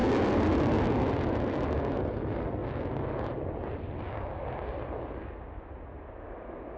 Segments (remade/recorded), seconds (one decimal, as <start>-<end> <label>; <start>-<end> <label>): 0.0-6.8 recorded